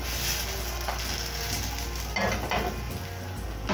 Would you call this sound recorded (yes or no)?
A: yes